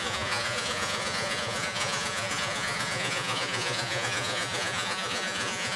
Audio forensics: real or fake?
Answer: fake